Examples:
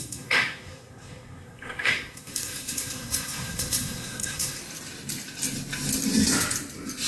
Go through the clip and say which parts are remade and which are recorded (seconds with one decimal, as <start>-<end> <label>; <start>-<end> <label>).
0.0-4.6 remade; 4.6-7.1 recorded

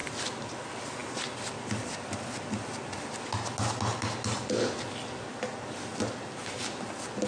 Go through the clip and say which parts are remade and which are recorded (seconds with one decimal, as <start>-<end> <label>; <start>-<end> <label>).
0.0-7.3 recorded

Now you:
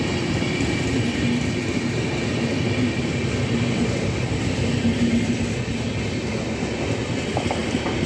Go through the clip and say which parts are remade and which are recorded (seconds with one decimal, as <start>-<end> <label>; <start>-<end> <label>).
0.0-7.6 recorded; 7.6-8.1 remade

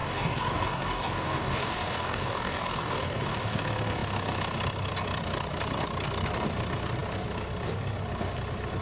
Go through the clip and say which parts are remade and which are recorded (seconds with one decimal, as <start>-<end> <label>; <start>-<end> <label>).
0.0-3.6 remade; 3.6-8.8 recorded

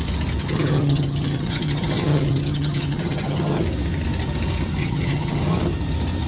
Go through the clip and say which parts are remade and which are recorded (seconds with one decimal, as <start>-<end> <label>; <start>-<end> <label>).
0.0-0.4 recorded; 0.4-3.6 remade; 3.6-4.8 recorded; 4.8-5.4 remade; 5.4-6.3 recorded